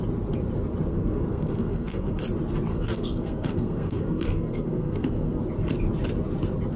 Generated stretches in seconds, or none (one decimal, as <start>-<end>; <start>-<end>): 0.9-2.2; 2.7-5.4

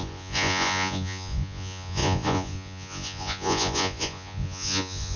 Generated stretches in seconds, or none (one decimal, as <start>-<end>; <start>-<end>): 0.0-5.2

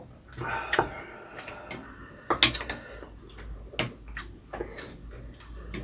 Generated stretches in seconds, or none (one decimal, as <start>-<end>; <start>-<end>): none

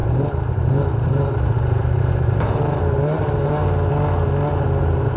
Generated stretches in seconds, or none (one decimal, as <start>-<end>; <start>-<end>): 0.0-3.6; 4.8-5.2

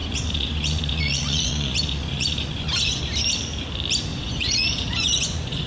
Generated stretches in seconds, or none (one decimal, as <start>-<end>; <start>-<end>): 0.0-3.0; 4.1-5.7